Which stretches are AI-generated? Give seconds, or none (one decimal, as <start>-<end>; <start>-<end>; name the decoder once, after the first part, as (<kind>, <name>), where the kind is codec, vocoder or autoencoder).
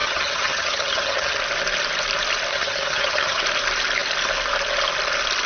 0.0-1.4 (vocoder, HiFi-GAN); 2.5-3.4